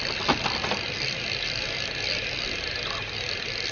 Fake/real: real